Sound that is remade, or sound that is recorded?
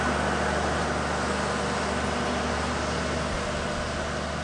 recorded